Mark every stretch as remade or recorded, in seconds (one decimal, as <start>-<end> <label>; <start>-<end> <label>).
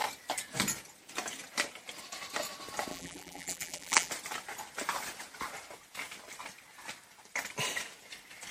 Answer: 0.0-2.9 recorded; 2.9-4.1 remade; 4.1-8.5 recorded